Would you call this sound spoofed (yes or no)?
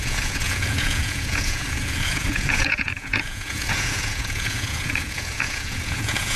yes